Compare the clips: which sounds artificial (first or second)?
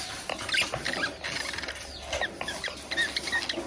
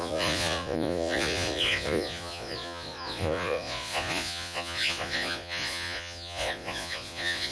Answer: second